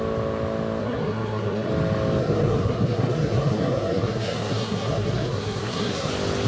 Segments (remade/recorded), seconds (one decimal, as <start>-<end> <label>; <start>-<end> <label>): 0.0-0.8 recorded; 0.8-1.7 remade; 1.7-2.2 recorded; 2.2-6.1 remade; 6.1-6.5 recorded